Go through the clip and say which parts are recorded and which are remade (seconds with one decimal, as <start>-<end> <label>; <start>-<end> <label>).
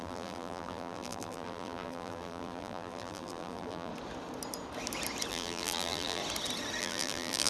0.0-3.9 remade; 3.9-5.3 recorded; 5.3-6.2 remade; 6.2-6.8 recorded; 6.8-7.5 remade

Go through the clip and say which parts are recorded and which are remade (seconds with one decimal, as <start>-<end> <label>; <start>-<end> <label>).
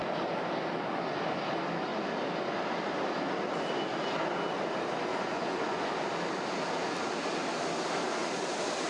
0.0-5.1 recorded; 5.1-5.9 remade; 5.9-8.9 recorded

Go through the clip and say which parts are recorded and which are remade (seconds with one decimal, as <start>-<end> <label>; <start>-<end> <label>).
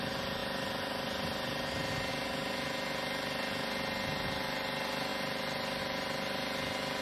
0.0-7.0 recorded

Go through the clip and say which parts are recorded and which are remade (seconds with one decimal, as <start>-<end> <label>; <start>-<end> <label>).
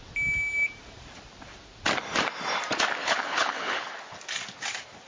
0.0-3.0 recorded; 3.0-3.9 remade; 3.9-5.1 recorded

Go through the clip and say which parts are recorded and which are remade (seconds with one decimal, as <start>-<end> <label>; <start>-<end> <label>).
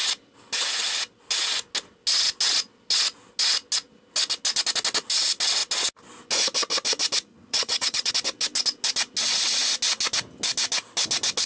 0.0-7.3 recorded; 7.3-8.1 remade; 8.1-11.5 recorded